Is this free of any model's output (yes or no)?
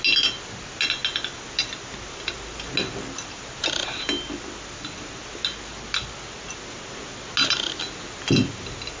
yes